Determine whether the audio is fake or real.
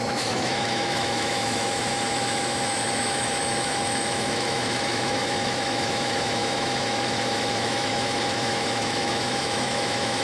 fake